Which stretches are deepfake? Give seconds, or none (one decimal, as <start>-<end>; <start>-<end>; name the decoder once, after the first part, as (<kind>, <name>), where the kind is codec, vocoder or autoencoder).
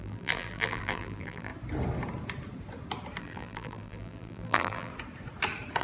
0.0-1.5 (vocoder, BigVGAN v2); 3.2-4.9